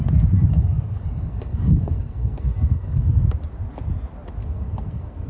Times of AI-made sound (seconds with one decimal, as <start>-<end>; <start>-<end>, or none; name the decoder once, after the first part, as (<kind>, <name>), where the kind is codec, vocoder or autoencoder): 0.5-3.2 (codec, SNAC); 4.4-5.3